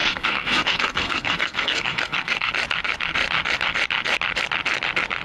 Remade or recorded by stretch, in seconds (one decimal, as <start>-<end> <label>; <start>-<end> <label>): 0.0-2.5 remade; 2.5-5.2 recorded